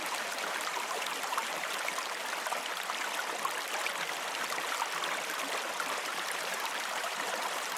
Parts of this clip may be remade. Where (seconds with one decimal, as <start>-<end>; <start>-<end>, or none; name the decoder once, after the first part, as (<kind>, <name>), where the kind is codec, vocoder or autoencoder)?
0.0-2.2 (vocoder, BigVGAN v2); 6.0-7.8